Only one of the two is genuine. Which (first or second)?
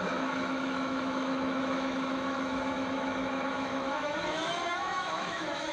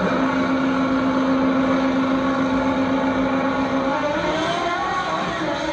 second